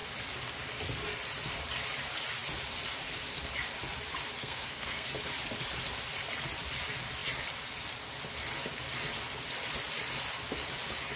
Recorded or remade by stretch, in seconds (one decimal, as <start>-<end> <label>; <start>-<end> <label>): 0.0-4.4 recorded; 4.4-5.1 remade; 5.1-11.2 recorded